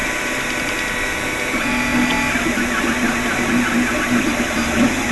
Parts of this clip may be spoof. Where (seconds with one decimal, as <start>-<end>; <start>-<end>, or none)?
none